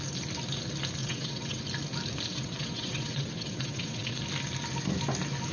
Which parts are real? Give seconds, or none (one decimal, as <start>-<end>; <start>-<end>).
0.0-1.0; 1.6-2.3; 4.2-5.5